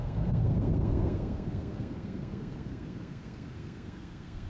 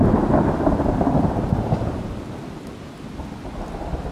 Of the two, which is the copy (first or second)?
first